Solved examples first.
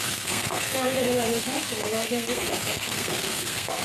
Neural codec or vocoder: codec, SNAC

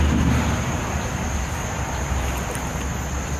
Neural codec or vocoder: none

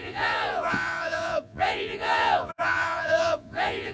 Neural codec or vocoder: vocoder, Vocos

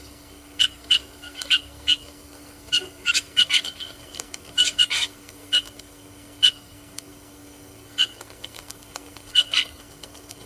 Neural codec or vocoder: codec, SNAC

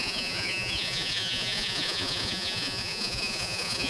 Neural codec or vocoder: vocoder, Vocos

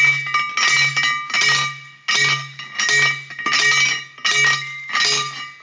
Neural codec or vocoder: none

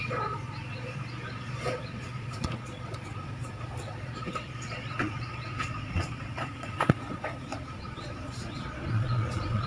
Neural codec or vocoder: vocoder, Vocos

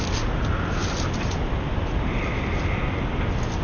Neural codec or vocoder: none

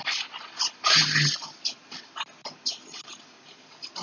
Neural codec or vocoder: none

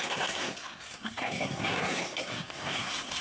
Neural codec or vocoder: codec, SNAC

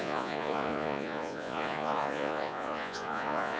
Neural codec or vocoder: vocoder, Vocos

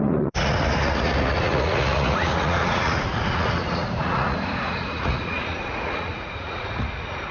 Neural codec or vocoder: vocoder, Vocos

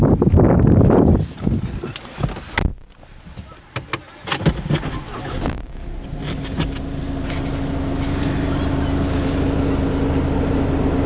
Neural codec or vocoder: none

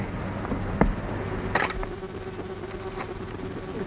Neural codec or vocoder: none